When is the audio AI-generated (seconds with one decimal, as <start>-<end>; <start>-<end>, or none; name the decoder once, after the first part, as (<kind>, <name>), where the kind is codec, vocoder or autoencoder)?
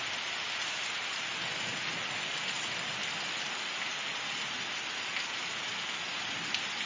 none